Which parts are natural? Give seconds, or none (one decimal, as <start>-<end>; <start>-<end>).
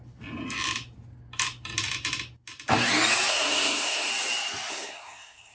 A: 0.0-3.3; 4.1-4.7